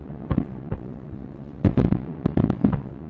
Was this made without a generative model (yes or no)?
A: no